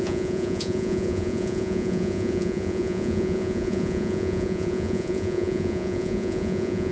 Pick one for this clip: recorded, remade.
remade